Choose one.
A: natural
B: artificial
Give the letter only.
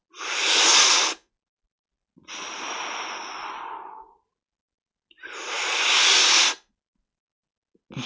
A